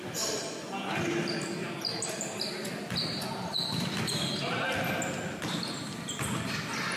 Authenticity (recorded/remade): recorded